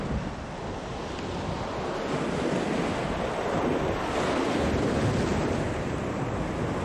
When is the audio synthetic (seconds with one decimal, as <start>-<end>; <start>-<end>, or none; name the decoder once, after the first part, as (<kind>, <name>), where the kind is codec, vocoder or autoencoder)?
5.3-6.0 (vocoder, BigVGAN v2)